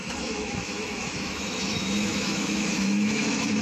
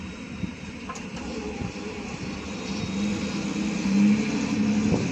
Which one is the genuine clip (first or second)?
second